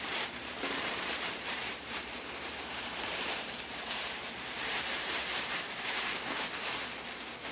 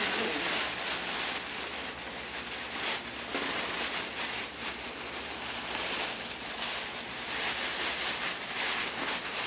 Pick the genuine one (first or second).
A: second